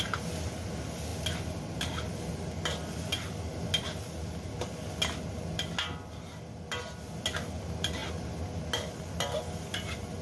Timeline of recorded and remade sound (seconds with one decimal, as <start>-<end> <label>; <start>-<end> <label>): 0.0-10.2 recorded